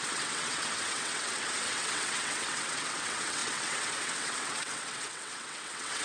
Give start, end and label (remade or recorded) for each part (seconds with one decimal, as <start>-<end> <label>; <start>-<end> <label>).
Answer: 0.0-6.0 remade